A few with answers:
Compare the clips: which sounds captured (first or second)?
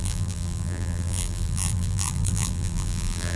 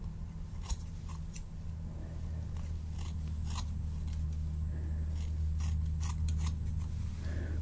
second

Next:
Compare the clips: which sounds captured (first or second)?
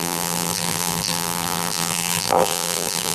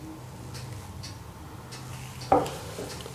second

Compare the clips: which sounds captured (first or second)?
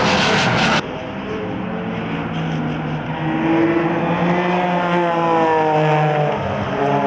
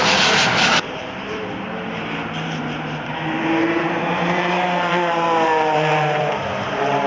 first